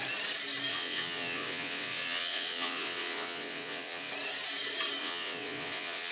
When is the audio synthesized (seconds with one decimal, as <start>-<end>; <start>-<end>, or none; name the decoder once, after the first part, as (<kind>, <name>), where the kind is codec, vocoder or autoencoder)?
0.7-4.1 (vocoder, WaveNeXt); 5.0-6.1